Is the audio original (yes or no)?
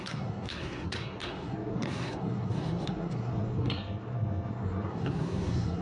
no